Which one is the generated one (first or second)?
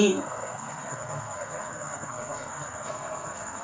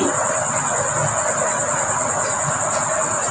first